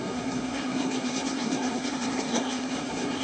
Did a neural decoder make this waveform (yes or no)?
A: yes